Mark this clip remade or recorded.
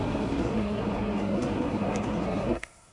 remade